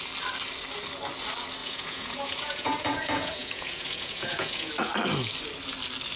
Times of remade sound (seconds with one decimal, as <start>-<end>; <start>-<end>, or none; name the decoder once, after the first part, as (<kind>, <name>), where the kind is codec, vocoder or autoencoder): 1.6-4.7 (vocoder, Vocos)